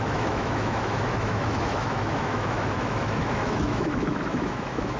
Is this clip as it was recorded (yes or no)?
no